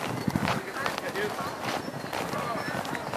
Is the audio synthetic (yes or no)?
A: no